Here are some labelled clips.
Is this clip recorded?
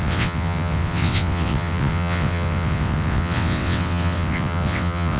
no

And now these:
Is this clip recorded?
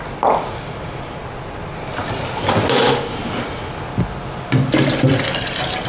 yes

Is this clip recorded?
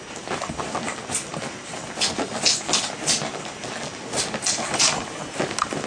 yes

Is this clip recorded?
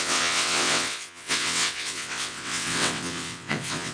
no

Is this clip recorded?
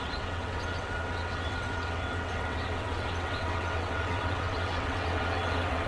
no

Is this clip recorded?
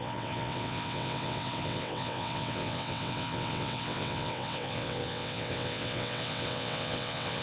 no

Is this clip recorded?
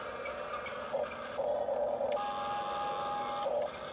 yes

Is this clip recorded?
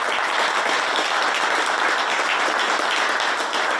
yes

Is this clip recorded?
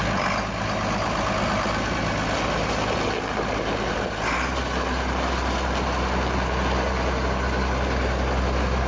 yes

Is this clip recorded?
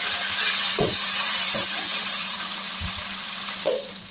no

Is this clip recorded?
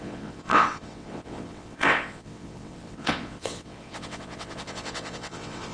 no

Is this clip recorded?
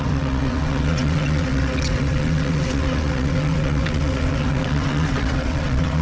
no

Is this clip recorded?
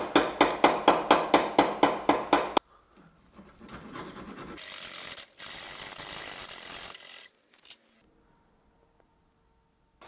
yes